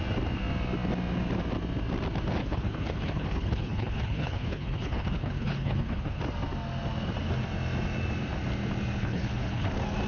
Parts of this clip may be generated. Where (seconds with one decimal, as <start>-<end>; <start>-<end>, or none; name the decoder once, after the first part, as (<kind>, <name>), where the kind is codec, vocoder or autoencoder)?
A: 2.4-6.2 (codec, HILCodec); 9.0-9.7